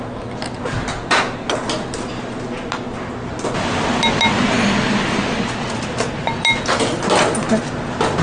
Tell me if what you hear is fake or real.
real